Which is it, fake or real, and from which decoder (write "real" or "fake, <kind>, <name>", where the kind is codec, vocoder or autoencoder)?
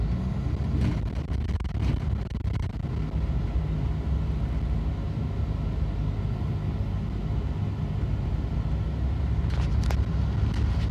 real